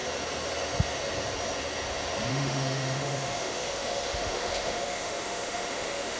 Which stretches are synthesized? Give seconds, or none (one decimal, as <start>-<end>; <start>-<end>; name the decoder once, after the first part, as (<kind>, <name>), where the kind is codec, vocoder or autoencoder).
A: 2.3-6.2 (autoencoder, DAC-VAE)